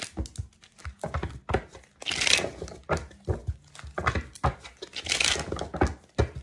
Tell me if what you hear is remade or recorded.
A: recorded